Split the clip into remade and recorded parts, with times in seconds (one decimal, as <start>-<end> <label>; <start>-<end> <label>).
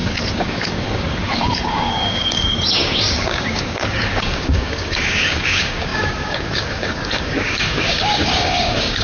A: 0.0-9.0 remade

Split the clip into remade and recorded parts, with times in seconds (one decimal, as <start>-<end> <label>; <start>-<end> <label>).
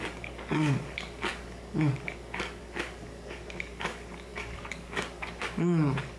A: 0.0-6.2 remade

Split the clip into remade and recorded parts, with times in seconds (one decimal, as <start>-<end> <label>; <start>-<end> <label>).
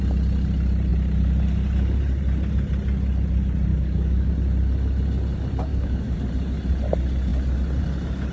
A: 0.0-3.7 recorded; 3.7-4.3 remade; 4.3-5.7 recorded; 5.7-6.3 remade; 6.3-8.3 recorded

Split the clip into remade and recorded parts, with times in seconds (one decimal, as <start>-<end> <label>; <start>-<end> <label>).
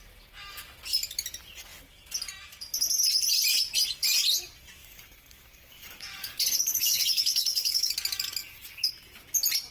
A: 0.0-4.8 recorded; 4.8-7.9 remade; 7.9-8.4 recorded; 8.4-8.9 remade; 8.9-9.7 recorded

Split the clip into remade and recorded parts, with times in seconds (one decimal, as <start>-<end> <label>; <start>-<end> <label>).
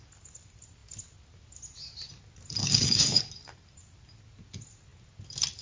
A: 0.0-2.6 recorded; 2.6-3.2 remade; 3.2-5.6 recorded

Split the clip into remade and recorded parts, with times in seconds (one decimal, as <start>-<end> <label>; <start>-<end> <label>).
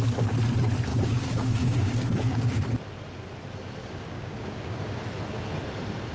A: 0.0-0.9 recorded; 0.9-2.6 remade; 2.6-3.8 recorded; 3.8-5.0 remade; 5.0-6.1 recorded